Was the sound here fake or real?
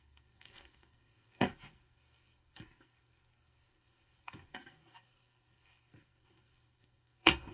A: fake